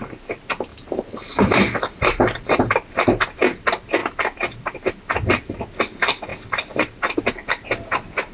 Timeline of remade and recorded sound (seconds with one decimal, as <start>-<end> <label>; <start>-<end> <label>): 0.0-0.7 recorded; 0.7-2.7 remade; 2.7-8.3 recorded